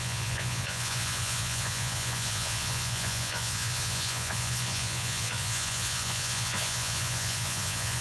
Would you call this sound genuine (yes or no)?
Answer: no